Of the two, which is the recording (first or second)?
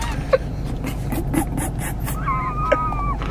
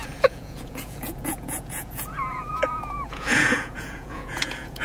first